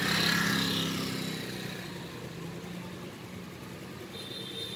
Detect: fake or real real